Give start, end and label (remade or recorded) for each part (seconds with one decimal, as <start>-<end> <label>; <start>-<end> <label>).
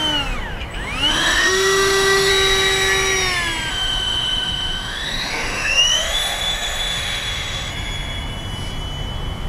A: 0.0-1.1 recorded; 1.1-2.3 remade; 2.3-3.7 recorded; 3.7-7.7 remade; 7.7-9.5 recorded